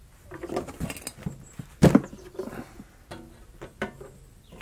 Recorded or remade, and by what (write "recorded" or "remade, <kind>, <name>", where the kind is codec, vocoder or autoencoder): recorded